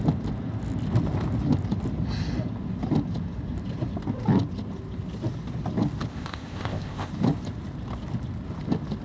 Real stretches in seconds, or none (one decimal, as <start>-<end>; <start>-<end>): 0.0-6.1; 7.1-9.0